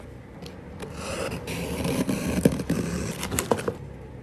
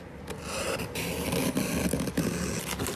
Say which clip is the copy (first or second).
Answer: first